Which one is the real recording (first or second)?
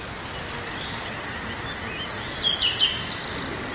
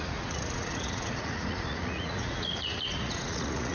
first